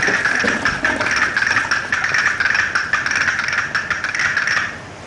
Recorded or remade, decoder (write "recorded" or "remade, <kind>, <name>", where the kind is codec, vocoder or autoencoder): recorded